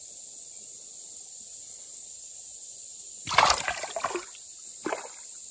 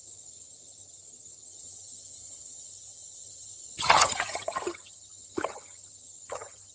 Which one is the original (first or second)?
first